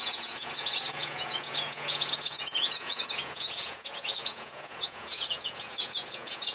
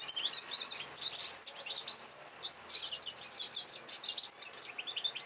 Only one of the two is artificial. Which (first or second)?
first